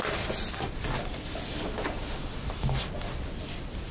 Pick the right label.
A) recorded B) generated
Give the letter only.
A